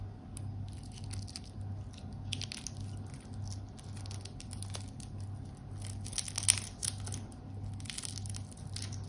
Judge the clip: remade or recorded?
recorded